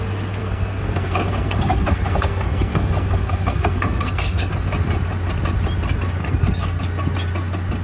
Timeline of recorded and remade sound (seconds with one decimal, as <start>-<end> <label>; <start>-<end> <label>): 0.0-0.4 recorded; 0.4-4.5 remade; 4.5-6.2 recorded; 6.2-6.8 remade; 6.8-7.8 recorded